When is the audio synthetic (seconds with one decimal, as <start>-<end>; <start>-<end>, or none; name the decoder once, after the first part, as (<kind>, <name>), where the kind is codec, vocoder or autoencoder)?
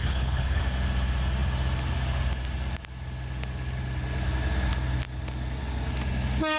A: 0.0-0.6 (codec, HILCodec)